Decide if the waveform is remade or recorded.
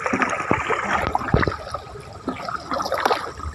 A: recorded